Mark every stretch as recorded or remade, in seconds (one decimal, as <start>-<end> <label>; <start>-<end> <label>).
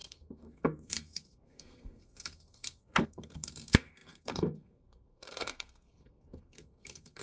0.0-7.2 remade